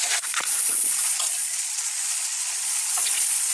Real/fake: fake